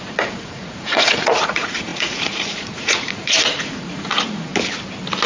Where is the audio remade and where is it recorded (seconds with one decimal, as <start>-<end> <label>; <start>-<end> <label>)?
0.0-4.5 remade; 4.5-5.3 recorded